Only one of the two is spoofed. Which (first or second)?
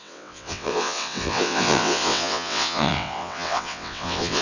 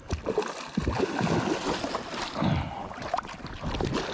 first